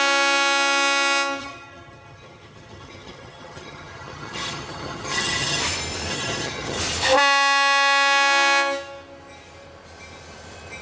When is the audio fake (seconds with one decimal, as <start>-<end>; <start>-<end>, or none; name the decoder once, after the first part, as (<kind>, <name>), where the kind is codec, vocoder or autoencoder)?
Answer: 1.4-5.6 (vocoder, HiFi-GAN); 6.1-6.8